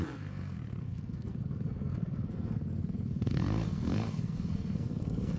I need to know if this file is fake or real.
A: fake